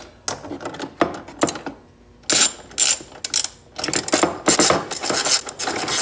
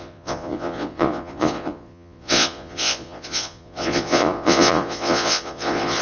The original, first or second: first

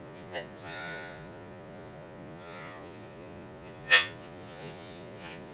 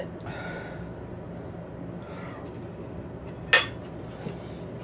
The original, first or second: second